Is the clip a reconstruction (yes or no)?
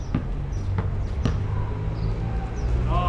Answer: no